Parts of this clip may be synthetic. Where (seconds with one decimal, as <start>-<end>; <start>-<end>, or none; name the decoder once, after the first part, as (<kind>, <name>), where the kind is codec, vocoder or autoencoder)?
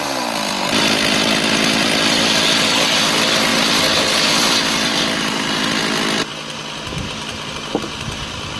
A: none